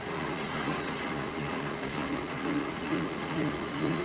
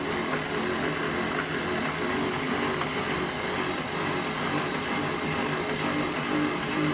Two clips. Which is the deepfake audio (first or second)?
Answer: first